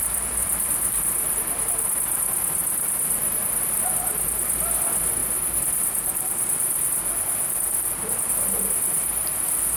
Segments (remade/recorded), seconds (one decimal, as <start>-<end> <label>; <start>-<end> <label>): 0.0-0.4 recorded; 0.4-1.4 remade; 1.4-5.2 recorded; 5.2-8.3 remade; 8.3-9.8 recorded